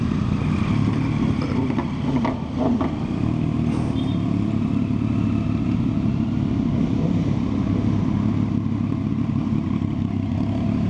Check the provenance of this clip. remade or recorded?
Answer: recorded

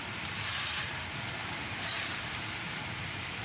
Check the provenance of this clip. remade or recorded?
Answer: remade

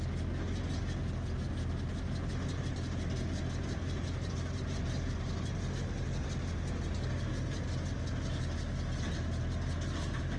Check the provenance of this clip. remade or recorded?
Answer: recorded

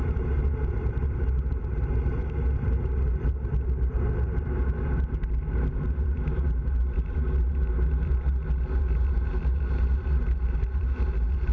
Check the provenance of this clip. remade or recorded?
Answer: remade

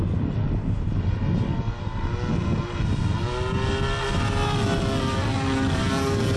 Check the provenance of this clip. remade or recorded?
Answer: recorded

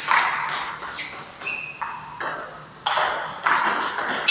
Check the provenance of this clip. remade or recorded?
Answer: recorded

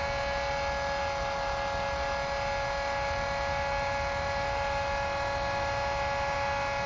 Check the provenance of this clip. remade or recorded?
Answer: recorded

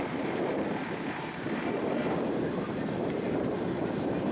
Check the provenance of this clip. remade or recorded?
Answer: remade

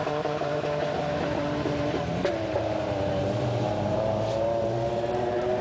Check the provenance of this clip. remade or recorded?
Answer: remade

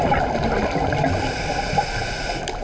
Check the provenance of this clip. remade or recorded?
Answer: recorded